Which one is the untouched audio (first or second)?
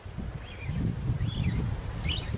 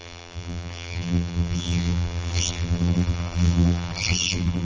first